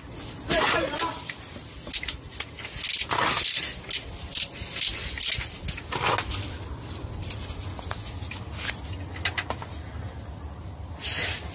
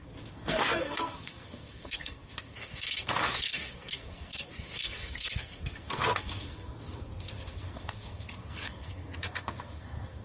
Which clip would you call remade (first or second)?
second